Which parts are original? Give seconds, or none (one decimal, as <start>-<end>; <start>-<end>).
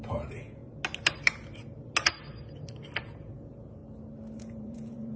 0.6-3.0; 3.8-4.4